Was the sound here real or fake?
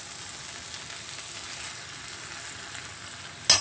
real